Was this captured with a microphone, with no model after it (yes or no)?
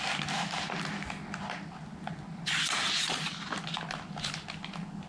yes